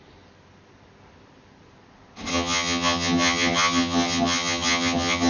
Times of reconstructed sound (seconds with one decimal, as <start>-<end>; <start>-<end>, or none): 2.3-5.3